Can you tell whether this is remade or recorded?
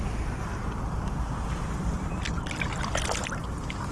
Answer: recorded